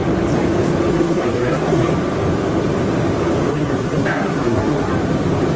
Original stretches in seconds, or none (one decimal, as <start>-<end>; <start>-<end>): 0.0-0.9; 1.9-3.5; 4.9-5.6